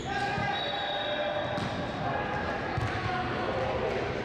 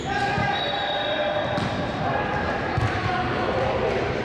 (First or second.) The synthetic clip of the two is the second